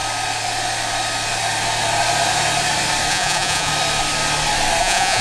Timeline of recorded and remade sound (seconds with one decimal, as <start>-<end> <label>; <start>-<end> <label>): 0.0-3.1 recorded; 3.1-3.7 remade; 3.7-4.8 recorded; 4.8-5.2 remade